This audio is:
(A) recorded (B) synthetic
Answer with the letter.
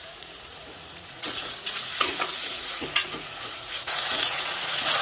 B